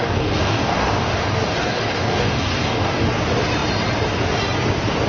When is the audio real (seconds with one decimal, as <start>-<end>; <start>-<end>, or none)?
3.1-5.1